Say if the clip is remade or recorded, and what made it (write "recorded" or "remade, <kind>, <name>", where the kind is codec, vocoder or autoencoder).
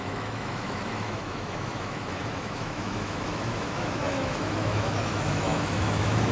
remade, autoencoder, DAC-VAE